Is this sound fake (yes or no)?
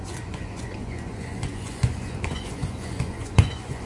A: yes